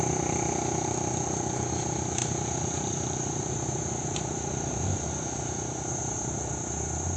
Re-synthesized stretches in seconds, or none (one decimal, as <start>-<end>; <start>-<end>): 2.2-6.5